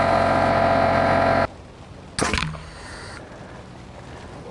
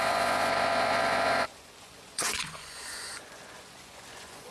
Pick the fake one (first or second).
second